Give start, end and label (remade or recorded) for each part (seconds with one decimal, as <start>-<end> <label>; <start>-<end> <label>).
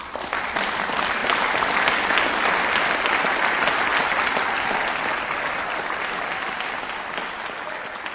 0.0-8.1 recorded